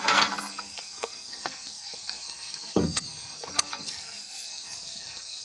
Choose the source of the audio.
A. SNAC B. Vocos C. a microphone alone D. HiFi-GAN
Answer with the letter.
A